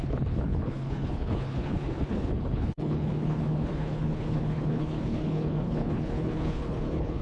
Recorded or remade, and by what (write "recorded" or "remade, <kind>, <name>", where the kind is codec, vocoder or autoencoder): remade, codec, HILCodec